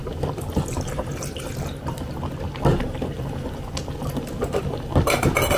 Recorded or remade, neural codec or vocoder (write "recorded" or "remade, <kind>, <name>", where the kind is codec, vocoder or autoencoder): recorded